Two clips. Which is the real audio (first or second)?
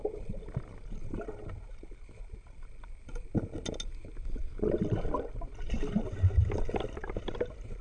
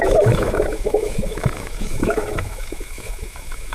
first